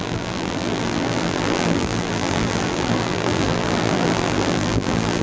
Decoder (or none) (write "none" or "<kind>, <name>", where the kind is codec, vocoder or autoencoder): vocoder, BigVGAN v2